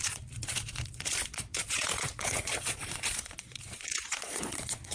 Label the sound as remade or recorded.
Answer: remade